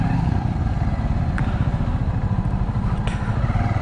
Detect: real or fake real